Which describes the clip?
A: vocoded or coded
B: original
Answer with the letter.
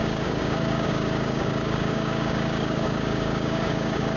A